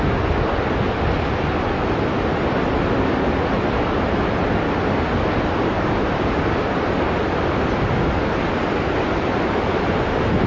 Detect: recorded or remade recorded